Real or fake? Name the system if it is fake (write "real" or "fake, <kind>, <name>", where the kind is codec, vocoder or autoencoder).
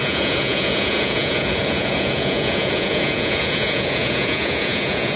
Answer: fake, vocoder, Vocos